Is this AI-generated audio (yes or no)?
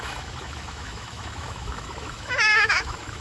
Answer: yes